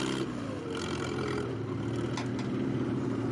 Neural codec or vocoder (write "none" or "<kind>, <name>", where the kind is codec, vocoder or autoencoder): none